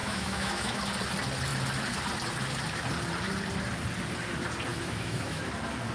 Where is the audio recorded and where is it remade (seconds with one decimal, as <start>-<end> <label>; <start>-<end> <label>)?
0.0-0.8 remade; 0.8-4.7 recorded; 4.7-5.4 remade; 5.4-5.9 recorded